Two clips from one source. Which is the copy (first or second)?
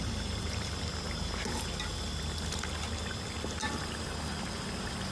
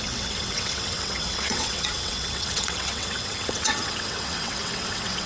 second